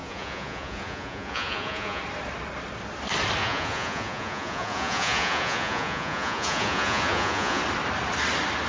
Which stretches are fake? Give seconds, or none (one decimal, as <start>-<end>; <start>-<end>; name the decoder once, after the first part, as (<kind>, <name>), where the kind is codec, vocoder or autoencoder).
0.0-2.0 (vocoder, Vocos); 3.4-7.6